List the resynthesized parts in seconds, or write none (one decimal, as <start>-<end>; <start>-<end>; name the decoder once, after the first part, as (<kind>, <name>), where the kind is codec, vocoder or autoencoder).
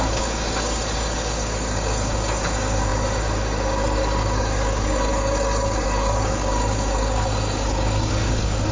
0.0-8.7 (codec, DAC)